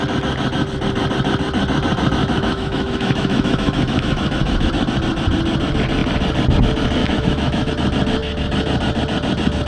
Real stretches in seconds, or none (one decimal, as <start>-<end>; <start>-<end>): 0.0-2.2; 4.7-7.0; 7.7-9.7